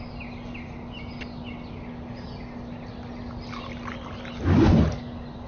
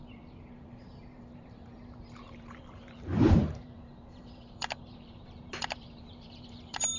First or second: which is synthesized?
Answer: second